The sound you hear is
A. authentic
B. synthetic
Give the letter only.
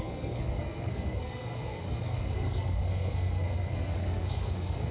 B